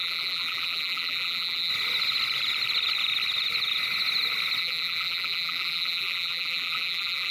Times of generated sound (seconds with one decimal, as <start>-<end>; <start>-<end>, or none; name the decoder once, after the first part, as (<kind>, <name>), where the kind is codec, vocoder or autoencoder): 0.0-1.7 (vocoder, BigVGAN v2); 4.6-7.3